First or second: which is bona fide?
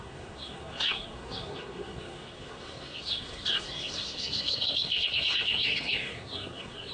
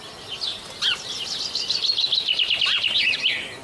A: second